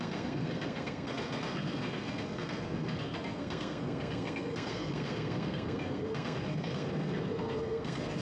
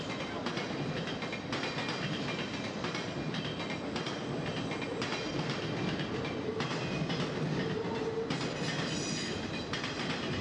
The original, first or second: second